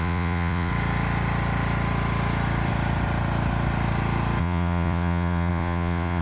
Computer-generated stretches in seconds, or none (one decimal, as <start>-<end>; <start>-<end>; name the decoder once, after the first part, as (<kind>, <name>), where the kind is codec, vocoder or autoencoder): 0.0-0.7 (vocoder, Vocos); 4.4-6.2